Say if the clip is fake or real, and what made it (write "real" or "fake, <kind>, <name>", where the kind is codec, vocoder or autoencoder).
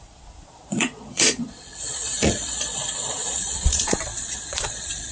fake, vocoder, Vocos